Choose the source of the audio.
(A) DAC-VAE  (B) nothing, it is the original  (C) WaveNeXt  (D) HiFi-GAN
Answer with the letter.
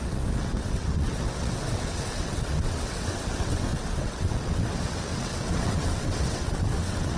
C